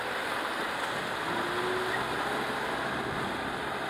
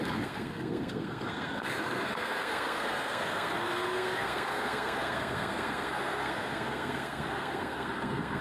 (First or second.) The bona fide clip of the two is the first